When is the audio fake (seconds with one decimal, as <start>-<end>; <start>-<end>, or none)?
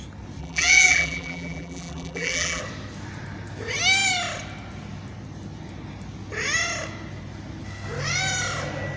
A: 0.4-2.6